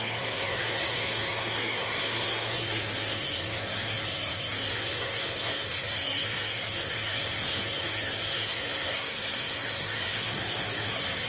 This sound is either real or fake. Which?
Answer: fake